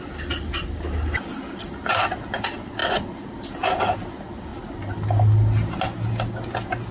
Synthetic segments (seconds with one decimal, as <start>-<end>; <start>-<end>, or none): none